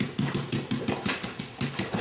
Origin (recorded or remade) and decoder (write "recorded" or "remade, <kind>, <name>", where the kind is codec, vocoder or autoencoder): recorded